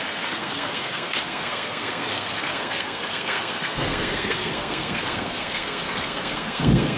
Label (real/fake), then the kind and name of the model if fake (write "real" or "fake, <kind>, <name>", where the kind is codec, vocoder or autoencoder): fake, codec, SNAC